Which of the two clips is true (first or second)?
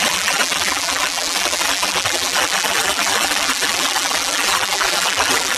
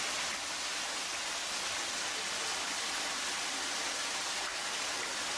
second